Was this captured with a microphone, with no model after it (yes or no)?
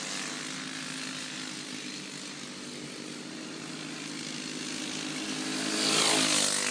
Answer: yes